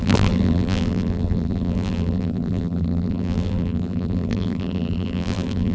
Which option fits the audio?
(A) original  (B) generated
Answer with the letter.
B